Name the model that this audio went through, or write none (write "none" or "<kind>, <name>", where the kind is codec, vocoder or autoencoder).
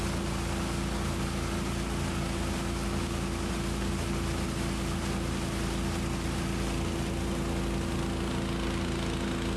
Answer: none